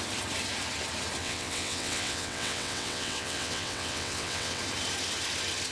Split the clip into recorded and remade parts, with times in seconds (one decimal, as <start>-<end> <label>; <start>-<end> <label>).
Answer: 0.0-1.2 recorded; 1.2-4.6 remade; 4.6-5.7 recorded